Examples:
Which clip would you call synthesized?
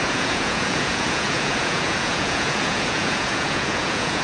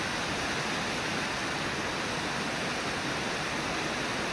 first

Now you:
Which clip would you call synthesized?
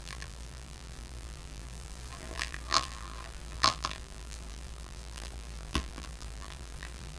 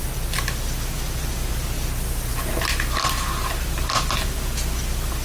first